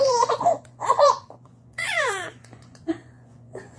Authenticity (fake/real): fake